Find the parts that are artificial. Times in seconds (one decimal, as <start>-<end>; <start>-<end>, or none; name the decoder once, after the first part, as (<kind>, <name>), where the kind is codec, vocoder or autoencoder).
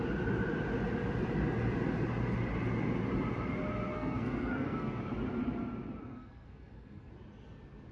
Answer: 3.9-5.0 (codec, SNAC); 6.0-7.1